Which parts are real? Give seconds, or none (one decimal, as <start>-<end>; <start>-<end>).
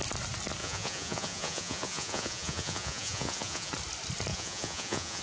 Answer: 0.0-0.6; 3.7-4.3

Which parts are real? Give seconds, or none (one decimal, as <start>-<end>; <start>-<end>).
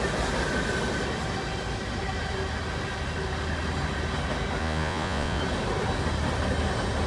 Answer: 0.0-4.6; 5.4-7.1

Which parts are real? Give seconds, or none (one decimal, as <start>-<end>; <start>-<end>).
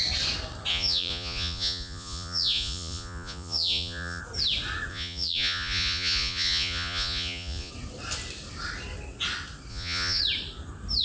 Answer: 0.0-0.7; 4.2-4.9; 7.7-9.7; 10.2-11.0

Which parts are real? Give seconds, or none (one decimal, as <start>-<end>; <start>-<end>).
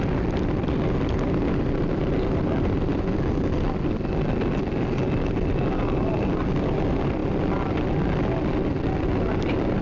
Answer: 0.0-9.8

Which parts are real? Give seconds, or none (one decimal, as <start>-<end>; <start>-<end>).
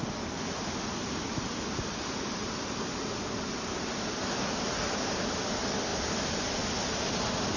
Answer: 0.0-7.6